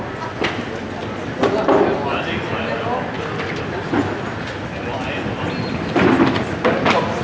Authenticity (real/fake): real